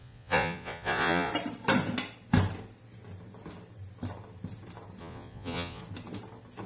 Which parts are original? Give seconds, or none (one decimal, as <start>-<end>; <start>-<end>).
1.3-5.0; 5.8-6.7

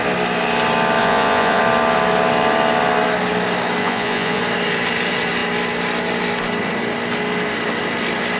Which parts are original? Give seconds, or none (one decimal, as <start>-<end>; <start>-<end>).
0.0-1.0; 1.6-3.8; 4.4-8.4

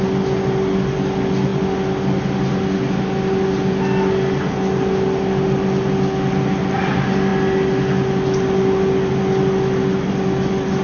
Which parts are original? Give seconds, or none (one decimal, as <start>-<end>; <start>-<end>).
0.0-10.8

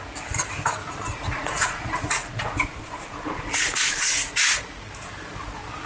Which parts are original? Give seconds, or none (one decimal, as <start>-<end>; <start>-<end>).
0.0-1.1; 4.4-5.9